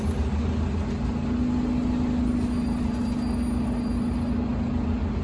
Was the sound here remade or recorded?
recorded